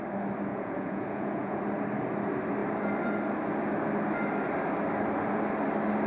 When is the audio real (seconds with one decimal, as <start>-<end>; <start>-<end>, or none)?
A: 0.0-0.5; 1.6-6.1